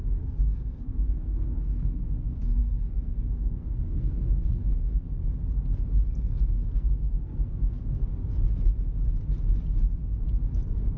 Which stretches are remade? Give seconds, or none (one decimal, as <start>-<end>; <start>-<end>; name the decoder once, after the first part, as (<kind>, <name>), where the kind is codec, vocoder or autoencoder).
0.0-5.1 (codec, SNAC); 6.1-8.1